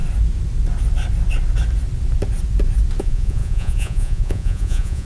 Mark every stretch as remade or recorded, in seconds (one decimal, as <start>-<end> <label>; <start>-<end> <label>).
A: 0.0-3.0 recorded; 3.0-5.0 remade